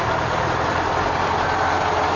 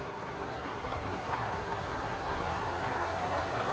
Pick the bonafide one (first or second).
first